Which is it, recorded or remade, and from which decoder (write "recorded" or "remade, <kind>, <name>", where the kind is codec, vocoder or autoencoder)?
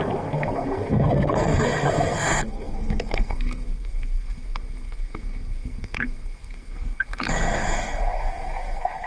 remade, codec, SNAC